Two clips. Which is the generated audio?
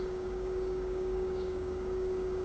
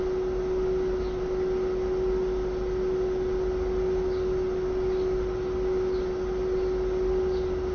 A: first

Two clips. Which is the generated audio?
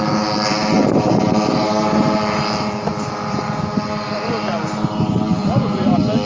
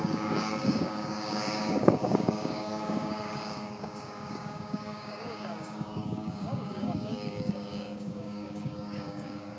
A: second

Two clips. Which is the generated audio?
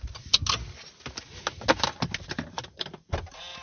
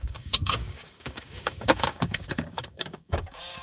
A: second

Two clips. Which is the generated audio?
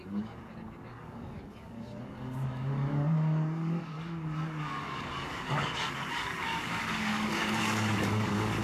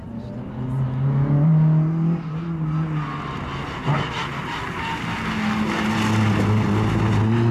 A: first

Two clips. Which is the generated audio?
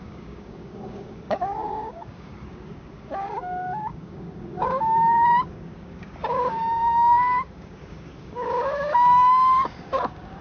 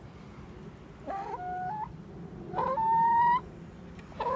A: first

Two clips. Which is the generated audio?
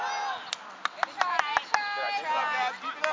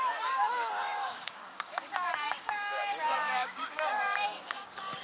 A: second